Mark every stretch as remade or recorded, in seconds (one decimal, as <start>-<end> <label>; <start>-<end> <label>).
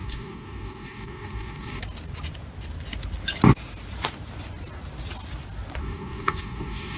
0.0-1.8 remade; 1.8-5.8 recorded; 5.8-7.0 remade